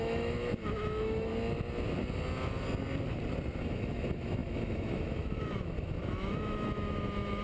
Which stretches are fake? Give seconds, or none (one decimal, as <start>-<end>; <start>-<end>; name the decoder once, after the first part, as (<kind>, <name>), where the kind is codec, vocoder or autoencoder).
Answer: 0.0-1.3 (autoencoder, DAC-VAE); 3.6-7.4